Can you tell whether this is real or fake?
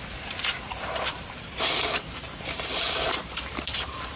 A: fake